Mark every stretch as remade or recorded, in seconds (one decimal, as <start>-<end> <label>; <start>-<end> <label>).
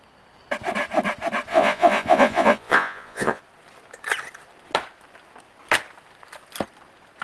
0.0-1.5 recorded; 1.5-3.4 remade; 3.4-7.2 recorded